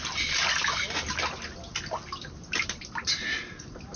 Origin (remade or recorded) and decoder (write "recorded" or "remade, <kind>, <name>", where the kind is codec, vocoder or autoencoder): recorded